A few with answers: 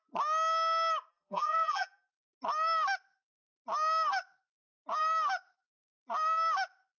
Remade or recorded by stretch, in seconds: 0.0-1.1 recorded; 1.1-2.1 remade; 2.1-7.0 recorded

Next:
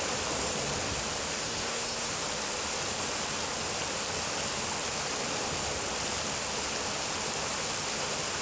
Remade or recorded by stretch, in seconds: 0.0-1.4 recorded; 1.4-2.1 remade; 2.1-8.4 recorded